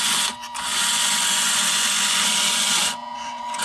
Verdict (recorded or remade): remade